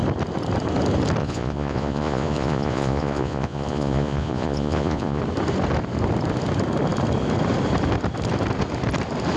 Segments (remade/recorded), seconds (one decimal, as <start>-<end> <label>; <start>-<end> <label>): 0.0-1.2 recorded; 1.2-5.2 remade; 5.2-9.4 recorded